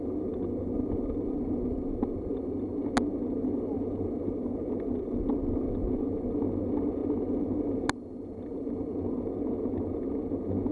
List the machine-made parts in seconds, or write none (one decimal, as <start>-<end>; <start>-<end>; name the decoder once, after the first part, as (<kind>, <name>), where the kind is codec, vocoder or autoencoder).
none